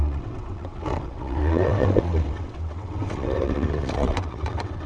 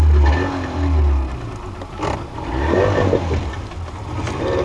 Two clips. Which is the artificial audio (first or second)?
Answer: first